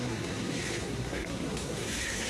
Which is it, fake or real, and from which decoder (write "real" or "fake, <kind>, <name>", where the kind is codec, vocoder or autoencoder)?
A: fake, codec, SNAC